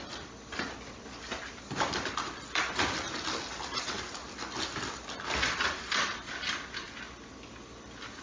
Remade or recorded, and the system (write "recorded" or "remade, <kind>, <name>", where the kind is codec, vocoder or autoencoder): recorded